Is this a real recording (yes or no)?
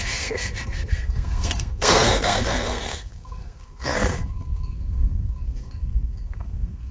no